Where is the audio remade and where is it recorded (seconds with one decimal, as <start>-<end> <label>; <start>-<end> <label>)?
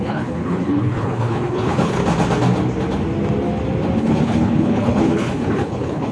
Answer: 0.0-2.0 remade; 2.0-4.0 recorded; 4.0-6.1 remade